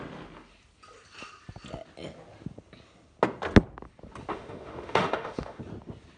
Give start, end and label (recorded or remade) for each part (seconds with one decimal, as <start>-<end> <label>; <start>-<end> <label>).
0.0-4.3 recorded; 4.3-5.6 remade; 5.6-6.2 recorded

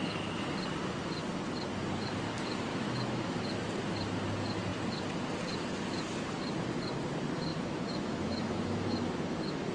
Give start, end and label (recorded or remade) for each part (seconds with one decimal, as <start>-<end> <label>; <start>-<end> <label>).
0.0-2.7 recorded; 2.7-3.4 remade; 3.4-7.5 recorded; 7.5-9.7 remade